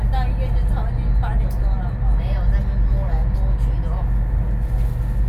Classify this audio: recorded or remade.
recorded